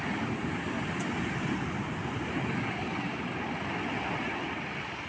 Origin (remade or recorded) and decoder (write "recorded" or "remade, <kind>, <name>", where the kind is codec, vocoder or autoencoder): recorded